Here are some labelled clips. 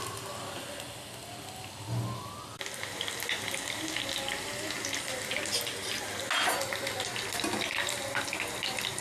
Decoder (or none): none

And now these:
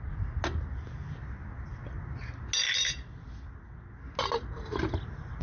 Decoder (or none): none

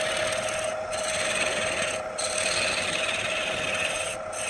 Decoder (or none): none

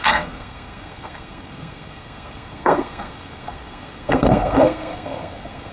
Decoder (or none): codec, SNAC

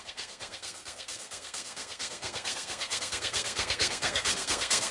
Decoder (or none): codec, SNAC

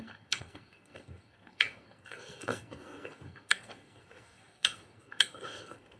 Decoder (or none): codec, SNAC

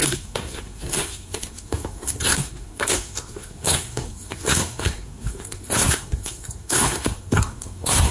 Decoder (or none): codec, SNAC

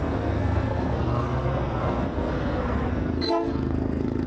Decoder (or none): codec, SNAC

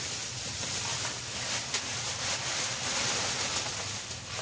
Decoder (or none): none